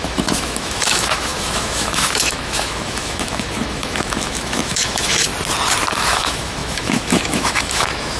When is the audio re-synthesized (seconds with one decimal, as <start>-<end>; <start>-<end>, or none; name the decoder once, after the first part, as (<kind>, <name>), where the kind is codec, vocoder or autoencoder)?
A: 0.0-5.3 (autoencoder, DAC-VAE); 5.9-8.2